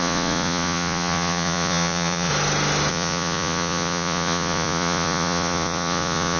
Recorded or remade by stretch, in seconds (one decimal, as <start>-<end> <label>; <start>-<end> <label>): 0.0-2.3 remade; 2.3-2.9 recorded; 2.9-6.4 remade